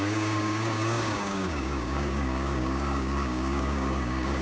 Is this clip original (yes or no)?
no